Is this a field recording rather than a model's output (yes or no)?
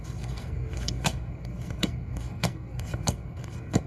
no